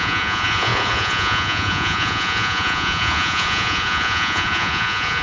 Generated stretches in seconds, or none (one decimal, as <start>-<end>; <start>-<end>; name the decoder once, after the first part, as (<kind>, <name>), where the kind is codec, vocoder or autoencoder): 0.0-5.2 (vocoder, Vocos)